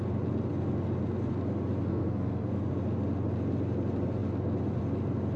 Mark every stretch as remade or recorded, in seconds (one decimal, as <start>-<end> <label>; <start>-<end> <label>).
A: 0.0-1.9 recorded; 1.9-2.7 remade; 2.7-5.4 recorded